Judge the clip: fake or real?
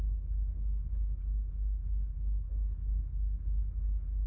fake